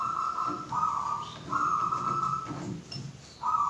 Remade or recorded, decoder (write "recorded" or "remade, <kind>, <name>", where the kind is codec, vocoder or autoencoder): recorded